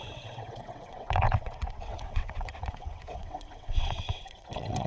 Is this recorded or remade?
remade